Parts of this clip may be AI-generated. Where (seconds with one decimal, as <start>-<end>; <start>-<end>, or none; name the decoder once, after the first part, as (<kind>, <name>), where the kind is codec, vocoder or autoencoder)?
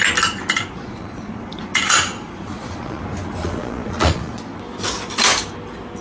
0.8-1.4 (vocoder, Vocos); 2.5-3.0; 3.4-4.4